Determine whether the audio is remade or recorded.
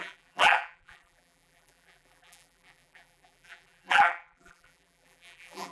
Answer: remade